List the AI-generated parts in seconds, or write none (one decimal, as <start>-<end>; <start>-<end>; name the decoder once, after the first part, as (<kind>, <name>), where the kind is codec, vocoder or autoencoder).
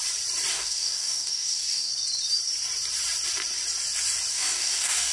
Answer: 0.5-1.9 (codec, DAC); 4.3-5.1